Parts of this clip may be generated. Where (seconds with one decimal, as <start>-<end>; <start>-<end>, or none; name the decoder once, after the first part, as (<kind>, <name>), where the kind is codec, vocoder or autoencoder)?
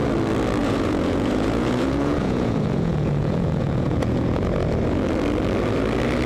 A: 0.6-4.4 (vocoder, Vocos)